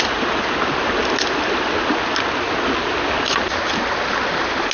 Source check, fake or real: real